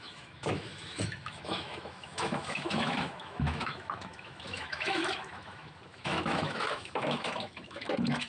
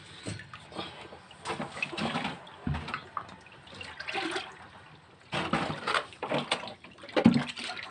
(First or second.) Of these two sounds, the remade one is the first